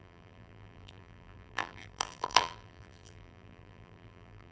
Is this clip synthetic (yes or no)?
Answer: yes